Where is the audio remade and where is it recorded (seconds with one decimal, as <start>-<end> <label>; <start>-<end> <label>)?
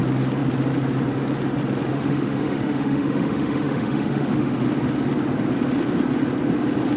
0.0-1.9 recorded; 1.9-4.6 remade; 4.6-7.0 recorded